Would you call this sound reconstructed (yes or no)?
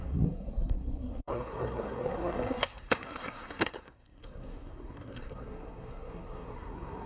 yes